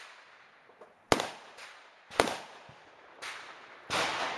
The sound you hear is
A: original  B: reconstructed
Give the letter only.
A